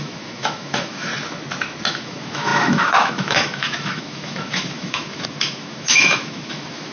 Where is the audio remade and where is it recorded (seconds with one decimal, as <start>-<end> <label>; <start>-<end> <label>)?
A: 0.0-1.1 remade; 1.1-1.9 recorded; 1.9-6.9 remade